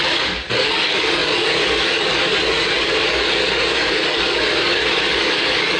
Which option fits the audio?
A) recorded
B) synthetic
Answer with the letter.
B